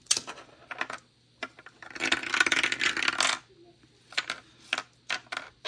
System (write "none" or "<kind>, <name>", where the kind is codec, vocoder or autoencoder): none